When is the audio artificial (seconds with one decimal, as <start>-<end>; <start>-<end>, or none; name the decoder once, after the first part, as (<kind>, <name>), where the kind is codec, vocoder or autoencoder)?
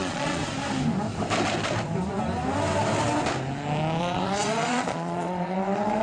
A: 0.0-0.4 (vocoder, Vocos); 4.0-6.0